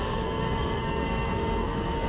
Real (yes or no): no